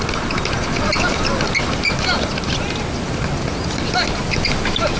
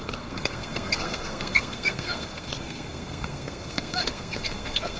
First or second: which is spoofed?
second